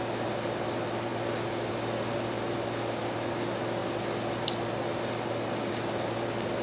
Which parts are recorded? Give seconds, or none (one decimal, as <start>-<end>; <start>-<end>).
0.0-6.6